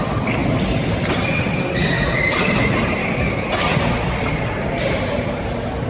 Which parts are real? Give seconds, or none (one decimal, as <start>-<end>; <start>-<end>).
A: 0.0-3.0; 3.5-5.9